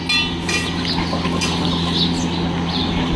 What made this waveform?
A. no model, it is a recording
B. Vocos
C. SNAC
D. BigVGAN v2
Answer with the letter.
A